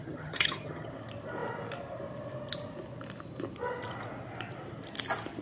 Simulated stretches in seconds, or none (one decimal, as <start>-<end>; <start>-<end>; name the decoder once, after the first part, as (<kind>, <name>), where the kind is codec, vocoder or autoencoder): 0.0-0.9 (vocoder, HiFi-GAN)